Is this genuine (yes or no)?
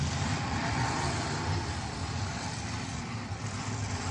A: no